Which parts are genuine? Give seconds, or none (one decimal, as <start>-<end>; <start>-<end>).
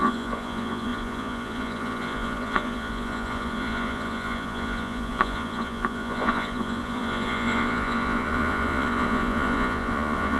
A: none